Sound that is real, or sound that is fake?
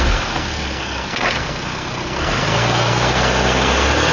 fake